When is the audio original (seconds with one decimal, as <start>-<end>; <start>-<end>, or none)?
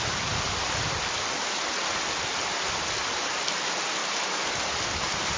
4.0-4.8